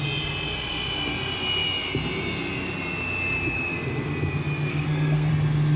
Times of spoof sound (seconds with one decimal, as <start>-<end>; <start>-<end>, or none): 4.7-5.3

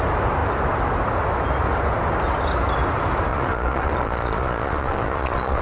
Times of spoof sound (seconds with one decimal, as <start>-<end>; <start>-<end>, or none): 3.3-5.6

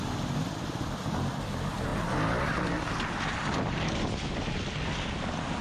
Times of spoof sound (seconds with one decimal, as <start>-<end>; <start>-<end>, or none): none

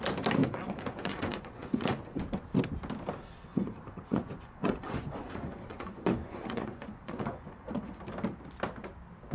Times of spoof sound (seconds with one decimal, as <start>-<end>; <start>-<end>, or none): 0.4-2.2; 3.5-8.0

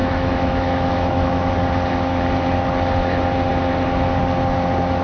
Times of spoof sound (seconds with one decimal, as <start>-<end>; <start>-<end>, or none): 0.0-1.5

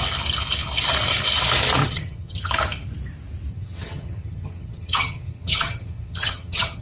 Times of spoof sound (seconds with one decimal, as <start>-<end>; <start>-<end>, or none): 1.8-2.5; 3.5-6.8